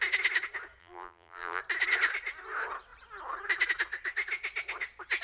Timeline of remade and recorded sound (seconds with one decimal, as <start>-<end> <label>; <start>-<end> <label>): 0.0-0.8 recorded; 0.8-1.6 remade; 1.6-5.2 recorded